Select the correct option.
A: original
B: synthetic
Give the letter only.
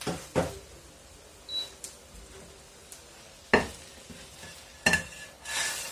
A